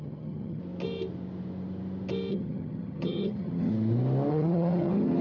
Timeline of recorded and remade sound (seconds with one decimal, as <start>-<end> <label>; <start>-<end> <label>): 0.0-0.6 remade; 0.6-2.3 recorded; 2.3-3.7 remade; 3.7-4.3 recorded; 4.3-5.2 remade